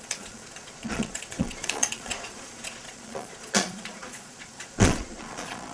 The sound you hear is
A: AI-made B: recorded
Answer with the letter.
A